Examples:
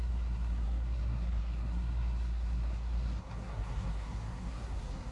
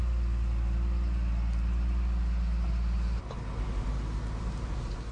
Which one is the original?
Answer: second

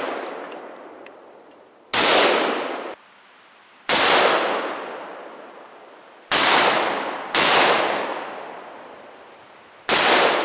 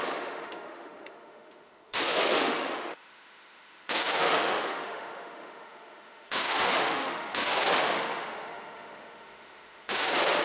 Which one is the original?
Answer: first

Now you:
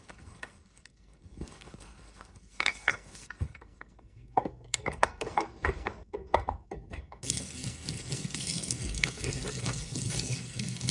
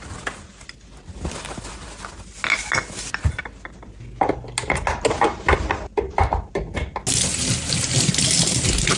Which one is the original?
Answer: second